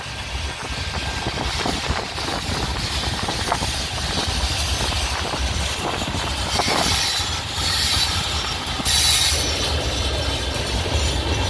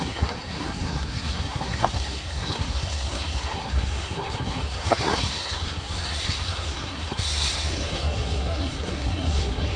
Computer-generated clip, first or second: second